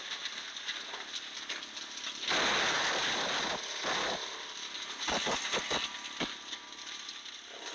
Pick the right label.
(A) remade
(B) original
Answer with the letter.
B